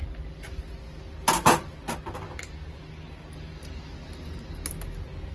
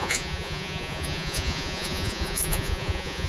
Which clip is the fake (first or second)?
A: second